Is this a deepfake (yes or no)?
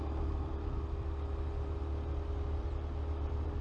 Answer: no